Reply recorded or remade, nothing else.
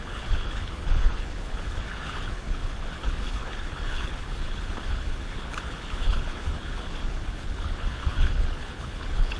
remade